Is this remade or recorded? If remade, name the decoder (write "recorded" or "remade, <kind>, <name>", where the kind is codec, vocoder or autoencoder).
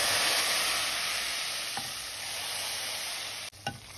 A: recorded